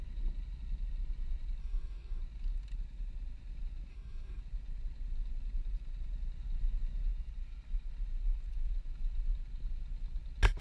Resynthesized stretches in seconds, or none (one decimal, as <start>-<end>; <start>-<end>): 1.6-2.2; 3.9-4.4

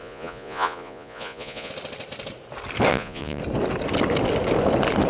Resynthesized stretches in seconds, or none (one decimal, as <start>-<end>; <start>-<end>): 0.0-1.7; 2.9-3.4

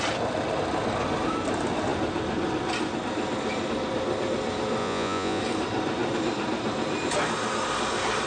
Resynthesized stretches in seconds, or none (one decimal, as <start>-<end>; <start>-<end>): 4.8-5.4

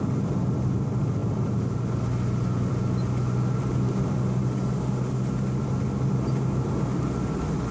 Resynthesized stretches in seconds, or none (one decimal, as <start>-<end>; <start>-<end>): none

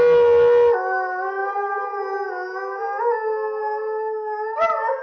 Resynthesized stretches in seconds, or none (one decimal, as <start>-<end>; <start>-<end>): none

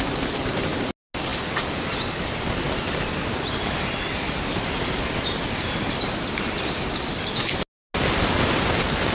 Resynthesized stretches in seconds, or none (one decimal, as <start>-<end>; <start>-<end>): none

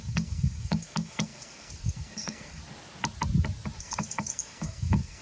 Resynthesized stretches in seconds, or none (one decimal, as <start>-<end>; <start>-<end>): 0.0-2.6; 3.8-5.2